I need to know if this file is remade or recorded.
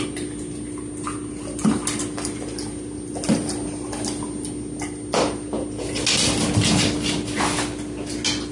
recorded